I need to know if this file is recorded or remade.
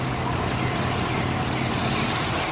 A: recorded